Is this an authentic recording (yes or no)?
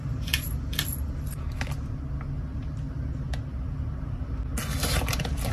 yes